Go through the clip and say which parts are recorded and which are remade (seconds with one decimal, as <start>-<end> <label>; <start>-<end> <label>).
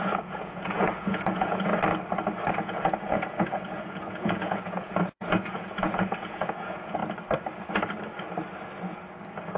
0.0-1.7 remade; 1.7-2.5 recorded; 2.5-7.0 remade; 7.0-9.6 recorded